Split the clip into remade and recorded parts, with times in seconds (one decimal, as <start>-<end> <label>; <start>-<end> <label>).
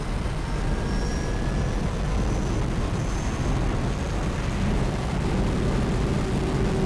0.0-6.9 recorded